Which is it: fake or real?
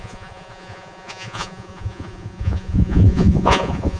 fake